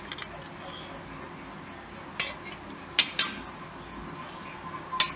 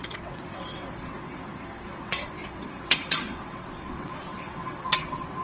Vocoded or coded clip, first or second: second